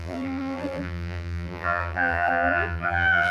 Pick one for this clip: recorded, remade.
remade